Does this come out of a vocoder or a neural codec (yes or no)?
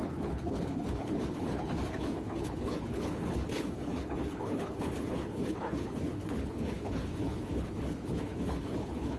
yes